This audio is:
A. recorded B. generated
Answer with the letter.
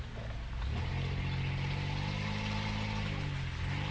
A